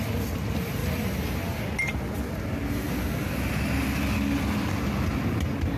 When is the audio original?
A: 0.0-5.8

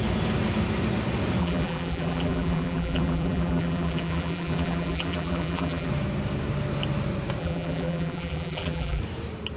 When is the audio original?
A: 0.0-1.4; 5.9-7.4; 9.0-9.6

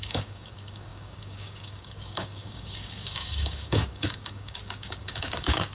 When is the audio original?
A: none

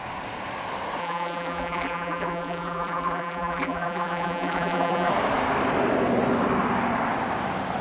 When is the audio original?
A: 0.0-1.0; 5.1-7.8

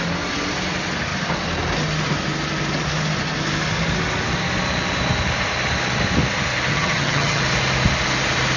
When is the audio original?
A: 0.0-6.7; 7.4-8.6

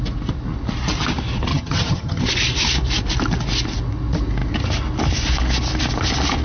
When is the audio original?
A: 0.0-1.5; 2.2-6.4

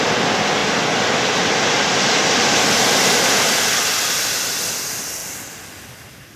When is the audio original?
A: 0.0-6.4

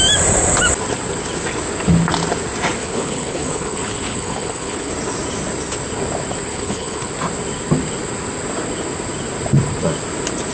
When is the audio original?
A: 0.0-2.8; 4.9-6.5; 7.1-10.5